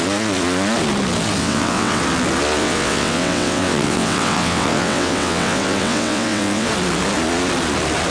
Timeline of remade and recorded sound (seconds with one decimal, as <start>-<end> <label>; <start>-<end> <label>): 0.0-1.4 recorded; 1.4-2.0 remade; 2.0-2.6 recorded; 2.6-6.7 remade; 6.7-8.1 recorded